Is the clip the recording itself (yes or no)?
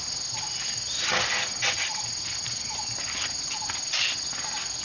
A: yes